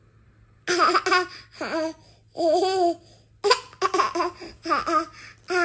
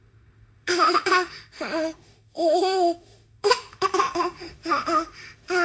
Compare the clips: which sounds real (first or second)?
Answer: first